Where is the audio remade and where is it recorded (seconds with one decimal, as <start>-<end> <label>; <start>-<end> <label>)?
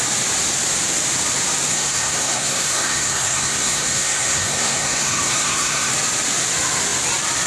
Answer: 0.0-1.7 recorded; 1.7-5.9 remade; 5.9-7.5 recorded